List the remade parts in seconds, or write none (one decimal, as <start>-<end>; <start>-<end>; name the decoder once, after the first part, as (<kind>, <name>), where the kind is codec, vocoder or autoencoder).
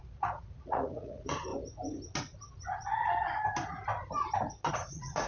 0.0-1.5 (vocoder, Vocos); 4.7-5.3